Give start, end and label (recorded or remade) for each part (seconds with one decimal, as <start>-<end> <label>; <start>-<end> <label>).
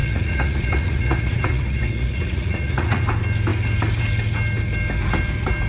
0.0-3.0 remade; 3.0-5.7 recorded